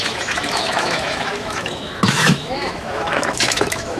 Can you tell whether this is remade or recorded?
remade